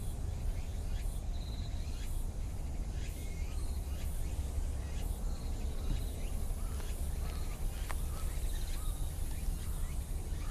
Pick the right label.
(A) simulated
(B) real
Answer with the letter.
B